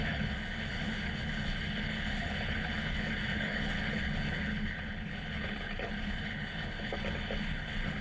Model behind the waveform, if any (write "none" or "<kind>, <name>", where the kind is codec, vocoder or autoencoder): codec, HILCodec